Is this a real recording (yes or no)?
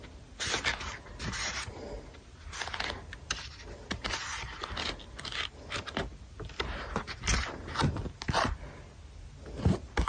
yes